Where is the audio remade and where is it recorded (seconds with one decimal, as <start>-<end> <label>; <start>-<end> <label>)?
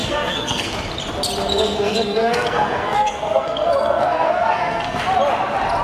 0.0-0.7 remade; 0.7-1.5 recorded; 1.5-5.0 remade; 5.0-5.8 recorded